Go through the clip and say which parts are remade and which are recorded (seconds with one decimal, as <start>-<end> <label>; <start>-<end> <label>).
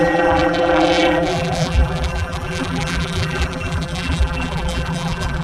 0.0-5.4 remade